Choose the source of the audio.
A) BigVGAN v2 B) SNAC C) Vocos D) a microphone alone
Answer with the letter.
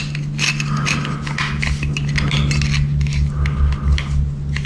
D